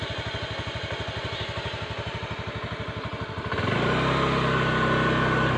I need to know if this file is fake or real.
real